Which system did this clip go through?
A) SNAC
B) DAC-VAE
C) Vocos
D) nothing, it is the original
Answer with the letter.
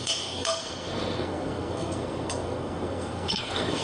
A